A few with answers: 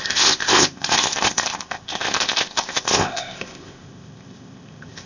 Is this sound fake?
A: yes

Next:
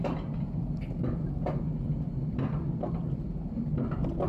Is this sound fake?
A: no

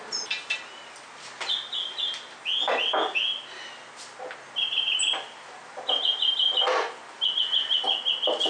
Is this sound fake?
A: no